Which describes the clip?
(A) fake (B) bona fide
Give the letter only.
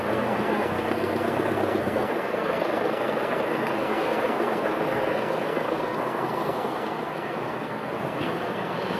A